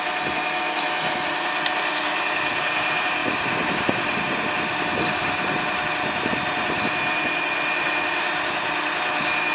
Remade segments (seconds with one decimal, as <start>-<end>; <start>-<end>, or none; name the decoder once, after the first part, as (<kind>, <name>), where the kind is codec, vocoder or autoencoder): none